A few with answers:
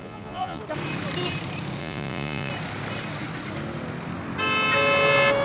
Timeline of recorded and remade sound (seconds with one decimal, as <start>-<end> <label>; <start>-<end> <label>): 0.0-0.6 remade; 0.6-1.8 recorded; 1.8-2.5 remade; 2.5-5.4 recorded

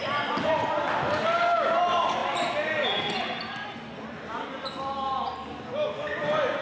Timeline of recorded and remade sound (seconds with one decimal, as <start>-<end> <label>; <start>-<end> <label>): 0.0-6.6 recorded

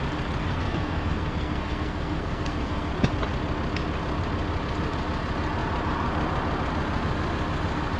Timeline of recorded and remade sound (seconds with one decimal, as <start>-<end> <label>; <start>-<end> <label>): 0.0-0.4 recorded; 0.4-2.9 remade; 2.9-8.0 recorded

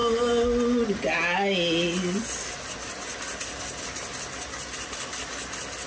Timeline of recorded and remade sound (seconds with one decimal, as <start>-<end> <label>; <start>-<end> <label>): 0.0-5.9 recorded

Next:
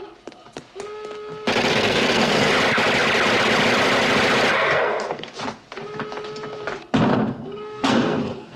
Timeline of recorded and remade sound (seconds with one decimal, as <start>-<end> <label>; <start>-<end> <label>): 0.0-1.7 recorded; 1.7-2.5 remade; 2.5-4.5 recorded; 4.5-5.3 remade; 5.3-7.1 recorded; 7.1-8.6 remade

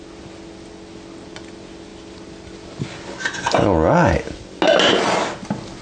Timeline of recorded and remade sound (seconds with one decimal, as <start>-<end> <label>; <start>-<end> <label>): 0.0-5.8 recorded